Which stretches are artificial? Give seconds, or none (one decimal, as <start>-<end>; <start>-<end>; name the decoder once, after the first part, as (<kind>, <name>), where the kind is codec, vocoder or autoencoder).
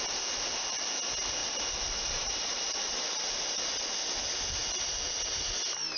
1.4-3.4 (vocoder, BigVGAN v2)